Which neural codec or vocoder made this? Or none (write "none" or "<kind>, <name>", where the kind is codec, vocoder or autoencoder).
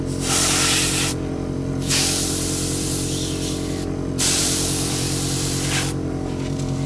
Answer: vocoder, BigVGAN v2